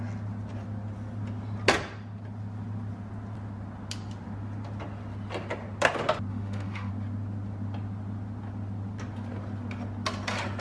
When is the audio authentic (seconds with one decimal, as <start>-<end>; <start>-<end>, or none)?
0.0-6.3; 6.9-10.6